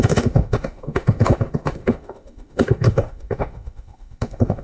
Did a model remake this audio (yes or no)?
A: yes